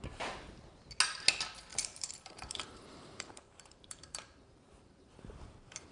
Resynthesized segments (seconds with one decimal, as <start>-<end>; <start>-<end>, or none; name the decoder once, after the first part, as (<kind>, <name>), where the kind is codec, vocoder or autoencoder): 1.7-5.2 (vocoder, BigVGAN v2)